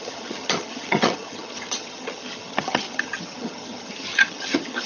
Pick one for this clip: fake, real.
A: fake